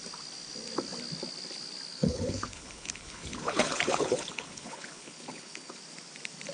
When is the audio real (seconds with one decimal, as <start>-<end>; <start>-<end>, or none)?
0.0-1.9; 5.8-6.5